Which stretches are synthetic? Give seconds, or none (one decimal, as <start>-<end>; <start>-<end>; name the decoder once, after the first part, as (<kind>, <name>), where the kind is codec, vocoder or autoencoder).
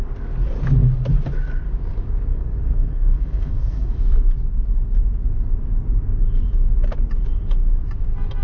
2.3-3.9 (codec, SNAC)